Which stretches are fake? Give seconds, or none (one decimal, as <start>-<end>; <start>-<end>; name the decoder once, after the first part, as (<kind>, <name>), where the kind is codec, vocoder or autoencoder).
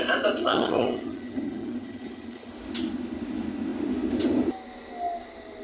0.4-2.5 (vocoder, HiFi-GAN)